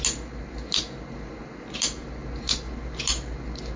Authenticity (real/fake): real